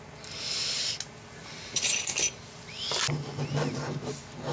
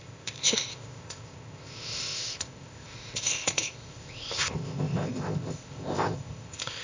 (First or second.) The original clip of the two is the first